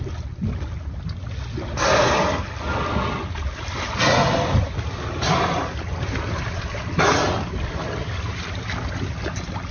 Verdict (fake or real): real